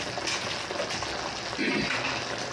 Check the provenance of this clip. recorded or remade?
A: recorded